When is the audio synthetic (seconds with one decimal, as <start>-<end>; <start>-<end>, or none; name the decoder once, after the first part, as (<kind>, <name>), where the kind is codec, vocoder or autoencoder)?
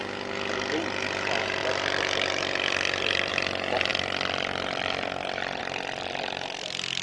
none